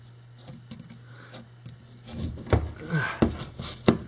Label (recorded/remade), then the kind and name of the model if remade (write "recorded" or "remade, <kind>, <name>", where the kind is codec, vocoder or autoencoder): recorded